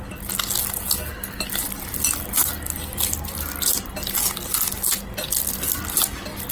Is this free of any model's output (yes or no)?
yes